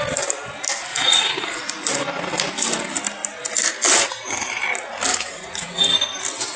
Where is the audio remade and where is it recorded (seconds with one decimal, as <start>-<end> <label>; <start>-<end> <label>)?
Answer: 0.0-0.9 recorded; 0.9-1.6 remade; 1.6-5.1 recorded; 5.1-5.8 remade; 5.8-6.6 recorded